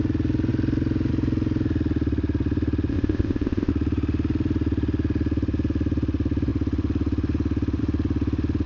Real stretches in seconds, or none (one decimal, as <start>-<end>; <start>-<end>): 0.0-2.9; 3.7-8.7